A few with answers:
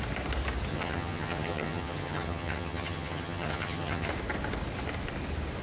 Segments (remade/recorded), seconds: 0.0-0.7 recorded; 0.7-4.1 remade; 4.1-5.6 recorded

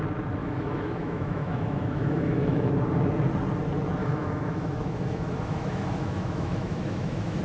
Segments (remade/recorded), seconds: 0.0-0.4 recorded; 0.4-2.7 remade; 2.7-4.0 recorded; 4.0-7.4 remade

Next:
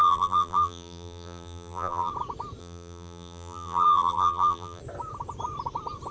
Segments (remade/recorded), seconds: 0.0-2.1 remade; 2.1-2.6 recorded; 2.6-4.8 remade; 4.8-6.1 recorded

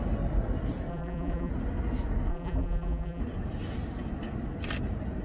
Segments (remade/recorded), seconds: 0.0-0.9 recorded; 0.9-1.5 remade; 1.5-2.3 recorded; 2.3-3.2 remade; 3.2-5.2 recorded